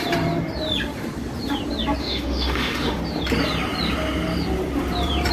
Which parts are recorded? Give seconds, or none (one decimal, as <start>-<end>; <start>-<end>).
0.0-2.0; 3.0-5.3